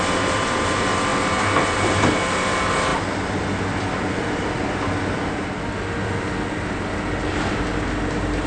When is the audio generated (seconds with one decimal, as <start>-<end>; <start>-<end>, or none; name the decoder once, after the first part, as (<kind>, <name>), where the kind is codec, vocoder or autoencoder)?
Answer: none

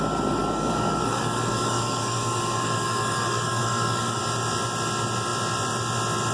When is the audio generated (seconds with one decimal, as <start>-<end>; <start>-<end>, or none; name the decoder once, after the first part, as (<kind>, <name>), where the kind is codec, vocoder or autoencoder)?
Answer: 0.4-4.2 (codec, DAC)

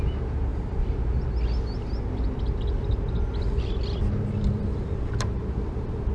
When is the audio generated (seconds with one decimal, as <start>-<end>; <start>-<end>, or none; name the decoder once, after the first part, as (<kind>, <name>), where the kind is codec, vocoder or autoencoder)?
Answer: 4.5-6.1 (vocoder, BigVGAN v2)

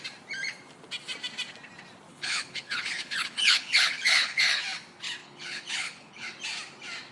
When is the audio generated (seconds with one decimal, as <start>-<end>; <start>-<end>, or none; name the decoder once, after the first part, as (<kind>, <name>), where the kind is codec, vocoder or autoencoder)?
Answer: 2.1-4.6 (codec, HILCodec); 5.2-6.3

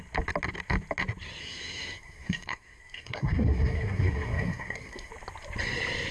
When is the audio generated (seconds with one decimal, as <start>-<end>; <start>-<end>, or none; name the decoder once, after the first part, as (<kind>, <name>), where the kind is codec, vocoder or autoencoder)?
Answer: 1.4-5.1 (codec, SNAC)

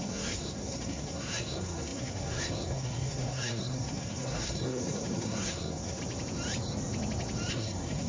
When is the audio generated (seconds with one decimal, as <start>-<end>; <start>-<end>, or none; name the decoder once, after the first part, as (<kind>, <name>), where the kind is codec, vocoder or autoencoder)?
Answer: 0.0-6.0 (codec, SNAC); 7.5-8.1

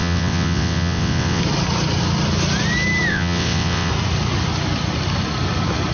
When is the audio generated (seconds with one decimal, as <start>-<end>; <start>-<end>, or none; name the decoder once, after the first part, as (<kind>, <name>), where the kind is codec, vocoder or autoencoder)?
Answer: 0.0-1.4 (vocoder, WaveNeXt); 3.1-3.9